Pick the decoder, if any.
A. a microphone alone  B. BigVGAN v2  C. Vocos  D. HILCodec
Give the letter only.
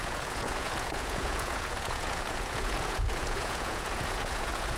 C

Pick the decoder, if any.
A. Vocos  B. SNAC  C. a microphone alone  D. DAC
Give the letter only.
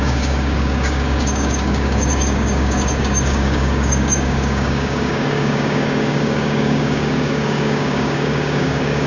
D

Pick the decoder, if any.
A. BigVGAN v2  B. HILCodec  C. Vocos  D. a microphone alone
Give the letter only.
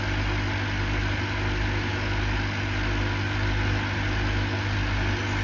D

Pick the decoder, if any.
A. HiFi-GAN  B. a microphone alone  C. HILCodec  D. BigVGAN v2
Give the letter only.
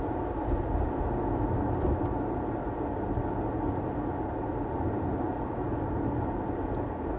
B